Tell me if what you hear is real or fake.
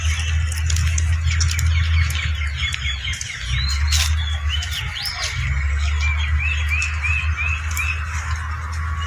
real